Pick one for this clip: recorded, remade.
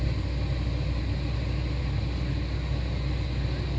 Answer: recorded